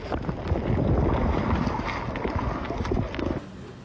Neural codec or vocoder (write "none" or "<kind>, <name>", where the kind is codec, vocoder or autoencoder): none